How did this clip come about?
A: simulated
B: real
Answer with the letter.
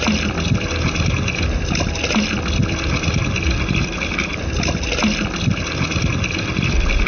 B